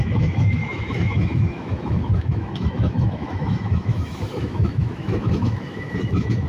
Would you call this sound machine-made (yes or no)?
yes